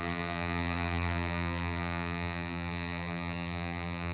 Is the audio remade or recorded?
remade